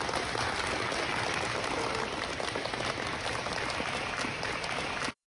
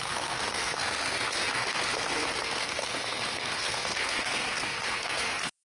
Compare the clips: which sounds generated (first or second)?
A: second